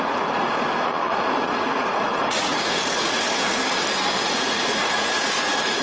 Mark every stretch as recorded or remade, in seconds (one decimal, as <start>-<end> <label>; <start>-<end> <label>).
0.0-3.6 remade; 3.6-4.2 recorded; 4.2-5.8 remade